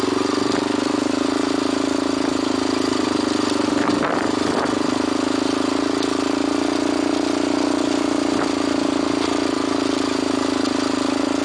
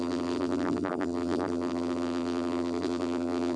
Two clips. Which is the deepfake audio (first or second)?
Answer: second